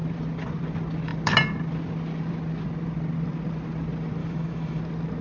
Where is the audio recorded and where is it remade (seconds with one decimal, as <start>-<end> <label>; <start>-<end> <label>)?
0.0-4.2 recorded; 4.2-4.8 remade; 4.8-5.2 recorded